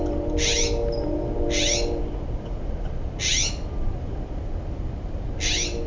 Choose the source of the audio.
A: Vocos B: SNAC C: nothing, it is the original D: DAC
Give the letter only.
C